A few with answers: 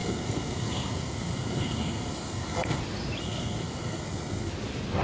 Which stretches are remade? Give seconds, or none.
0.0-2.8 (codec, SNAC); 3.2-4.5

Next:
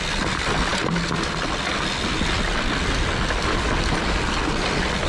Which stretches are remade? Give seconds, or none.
none

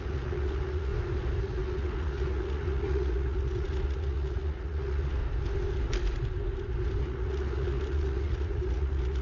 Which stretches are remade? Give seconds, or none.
0.0-0.9 (vocoder, Vocos); 1.4-5.2; 7.0-9.2

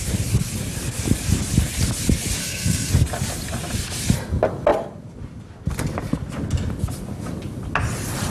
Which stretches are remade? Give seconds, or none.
2.4-2.9 (codec, SNAC)